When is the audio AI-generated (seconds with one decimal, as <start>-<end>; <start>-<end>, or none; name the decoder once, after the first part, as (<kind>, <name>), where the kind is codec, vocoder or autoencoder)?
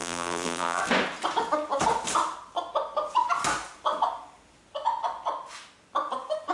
0.0-0.8 (vocoder, BigVGAN v2)